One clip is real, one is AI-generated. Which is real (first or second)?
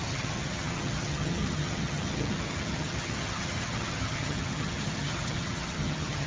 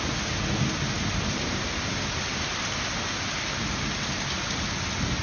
second